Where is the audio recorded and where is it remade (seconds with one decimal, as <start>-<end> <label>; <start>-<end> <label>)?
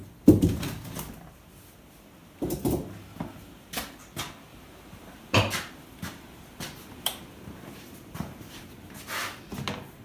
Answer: 0.0-1.0 remade; 1.0-4.5 recorded; 4.5-9.0 remade; 9.0-10.0 recorded